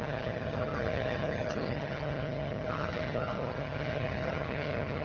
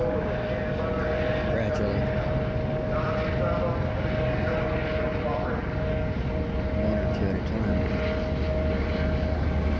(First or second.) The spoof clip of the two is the first